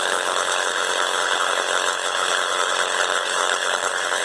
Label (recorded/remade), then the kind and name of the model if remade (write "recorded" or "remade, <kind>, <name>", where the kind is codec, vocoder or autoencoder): remade, codec, HILCodec